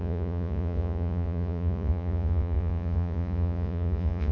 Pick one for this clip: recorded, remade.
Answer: remade